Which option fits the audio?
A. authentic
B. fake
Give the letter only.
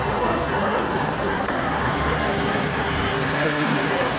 B